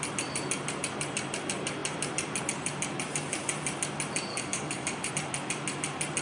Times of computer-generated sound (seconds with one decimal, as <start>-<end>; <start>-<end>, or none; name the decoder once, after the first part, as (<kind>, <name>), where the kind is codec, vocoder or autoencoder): 4.3-5.1 (codec, DAC)